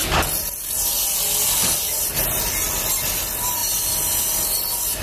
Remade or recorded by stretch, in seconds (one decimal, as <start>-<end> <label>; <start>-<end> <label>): 0.0-5.0 recorded